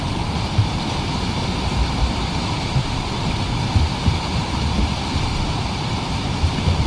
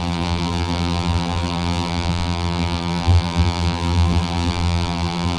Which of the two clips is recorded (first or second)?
first